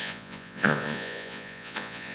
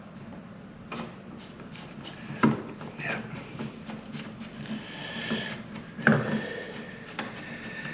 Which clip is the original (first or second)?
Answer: second